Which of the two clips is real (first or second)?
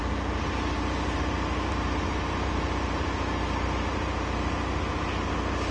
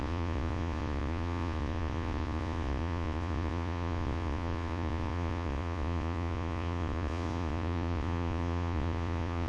first